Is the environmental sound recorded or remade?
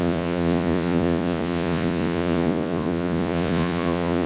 remade